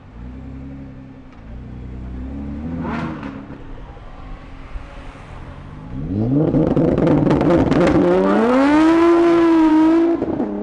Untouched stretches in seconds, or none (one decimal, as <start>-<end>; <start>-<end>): 0.0-8.0; 9.7-10.6